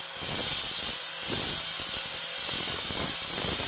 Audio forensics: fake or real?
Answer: real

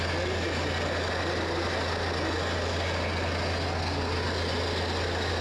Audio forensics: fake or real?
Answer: real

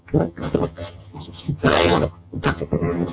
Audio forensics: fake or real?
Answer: fake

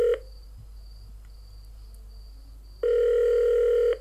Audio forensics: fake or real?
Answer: real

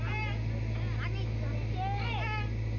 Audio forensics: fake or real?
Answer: real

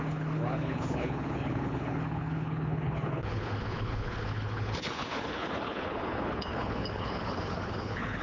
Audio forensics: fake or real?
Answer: fake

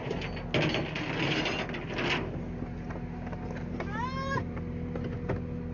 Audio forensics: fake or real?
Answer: real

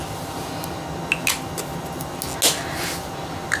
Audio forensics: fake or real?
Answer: real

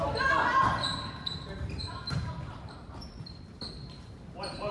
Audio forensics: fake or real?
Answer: fake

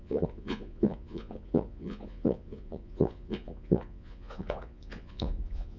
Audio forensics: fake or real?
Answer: fake